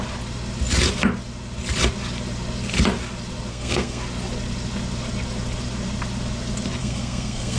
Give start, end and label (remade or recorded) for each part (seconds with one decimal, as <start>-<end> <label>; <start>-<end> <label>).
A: 0.0-3.5 recorded; 3.5-4.0 remade; 4.0-6.8 recorded; 6.8-7.6 remade